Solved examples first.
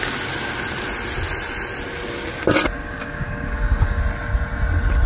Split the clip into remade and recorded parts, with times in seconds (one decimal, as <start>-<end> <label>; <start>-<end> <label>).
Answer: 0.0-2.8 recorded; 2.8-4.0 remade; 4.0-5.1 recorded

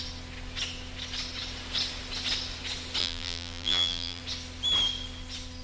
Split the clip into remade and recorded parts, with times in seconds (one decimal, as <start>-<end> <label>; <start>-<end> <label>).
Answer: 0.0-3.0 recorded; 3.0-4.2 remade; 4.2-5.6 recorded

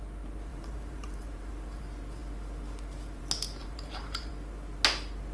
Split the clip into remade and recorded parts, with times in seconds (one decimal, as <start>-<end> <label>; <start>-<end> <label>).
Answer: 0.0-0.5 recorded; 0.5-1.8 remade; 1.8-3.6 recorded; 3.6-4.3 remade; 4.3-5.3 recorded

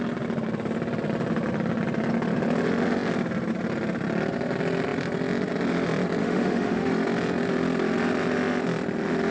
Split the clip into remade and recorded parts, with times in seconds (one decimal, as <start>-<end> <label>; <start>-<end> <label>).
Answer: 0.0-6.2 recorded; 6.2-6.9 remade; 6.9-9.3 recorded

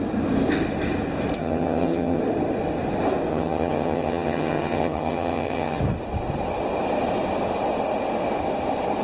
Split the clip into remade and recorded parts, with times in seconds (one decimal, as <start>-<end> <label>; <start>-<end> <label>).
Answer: 0.0-1.4 recorded; 1.4-2.2 remade; 2.2-3.3 recorded; 3.3-5.8 remade; 5.8-9.0 recorded